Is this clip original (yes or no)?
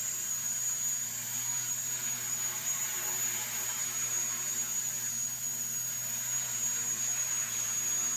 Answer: no